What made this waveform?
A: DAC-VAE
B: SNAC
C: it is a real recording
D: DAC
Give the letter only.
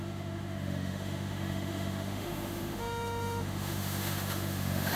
A